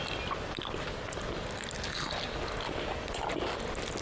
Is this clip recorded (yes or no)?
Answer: yes